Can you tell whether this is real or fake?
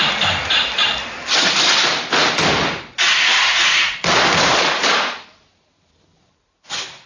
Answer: real